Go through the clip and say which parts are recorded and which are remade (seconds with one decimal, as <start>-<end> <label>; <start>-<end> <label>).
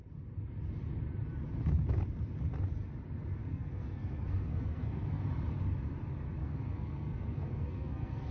0.0-3.4 recorded; 3.4-5.2 remade; 5.2-6.4 recorded; 6.4-8.3 remade